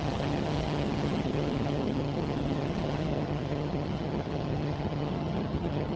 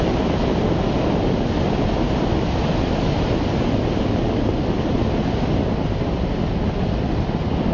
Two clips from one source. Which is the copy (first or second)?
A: first